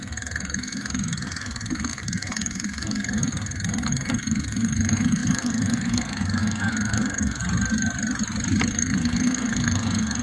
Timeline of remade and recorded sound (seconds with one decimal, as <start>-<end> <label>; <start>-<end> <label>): 0.0-7.4 remade; 7.4-8.7 recorded; 8.7-10.2 remade